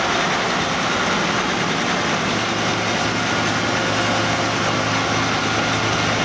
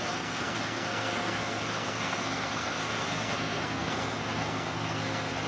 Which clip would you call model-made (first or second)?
second